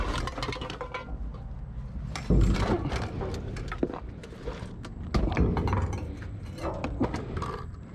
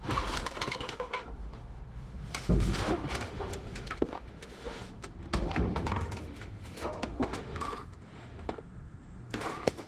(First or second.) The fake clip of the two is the second